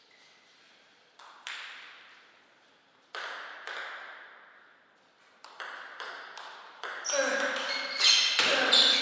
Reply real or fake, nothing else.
real